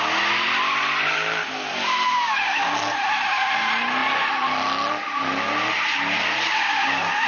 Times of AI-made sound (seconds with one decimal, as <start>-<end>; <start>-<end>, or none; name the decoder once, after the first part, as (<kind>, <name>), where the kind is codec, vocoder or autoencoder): none